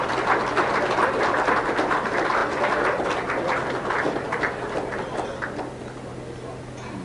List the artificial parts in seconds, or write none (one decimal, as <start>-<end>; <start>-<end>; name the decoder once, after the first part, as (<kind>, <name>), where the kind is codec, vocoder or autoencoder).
none

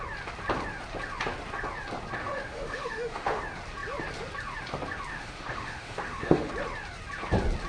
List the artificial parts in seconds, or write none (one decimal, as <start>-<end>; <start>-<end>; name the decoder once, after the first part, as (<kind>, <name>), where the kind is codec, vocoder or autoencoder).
2.2-3.4 (autoencoder, DAC-VAE); 5.1-6.5

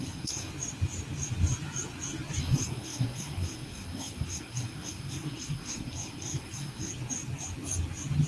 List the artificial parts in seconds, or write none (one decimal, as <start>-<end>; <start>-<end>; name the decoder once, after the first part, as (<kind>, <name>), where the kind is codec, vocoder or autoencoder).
0.0-0.5 (codec, SNAC); 2.4-6.9

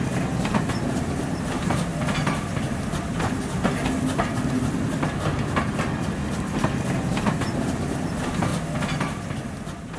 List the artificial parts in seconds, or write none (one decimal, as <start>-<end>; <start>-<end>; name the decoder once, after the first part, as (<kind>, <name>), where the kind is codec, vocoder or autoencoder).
0.0-1.9 (vocoder, BigVGAN v2); 7.0-8.5

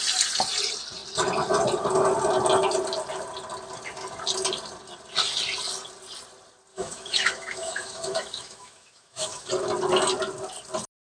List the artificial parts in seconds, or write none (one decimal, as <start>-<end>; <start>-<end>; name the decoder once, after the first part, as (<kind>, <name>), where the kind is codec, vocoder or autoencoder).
6.7-9.5 (autoencoder, DAC-VAE)

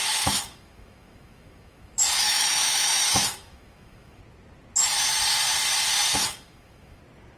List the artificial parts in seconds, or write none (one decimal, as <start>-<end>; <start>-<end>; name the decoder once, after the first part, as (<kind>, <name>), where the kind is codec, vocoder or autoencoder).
0.0-4.2 (autoencoder, DAC-VAE); 6.1-7.0